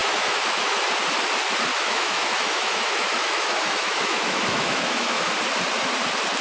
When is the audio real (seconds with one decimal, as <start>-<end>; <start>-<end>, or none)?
0.8-1.7; 5.3-6.4